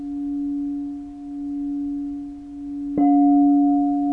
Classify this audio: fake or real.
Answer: real